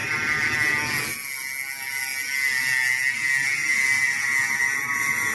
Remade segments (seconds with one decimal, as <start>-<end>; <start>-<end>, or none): none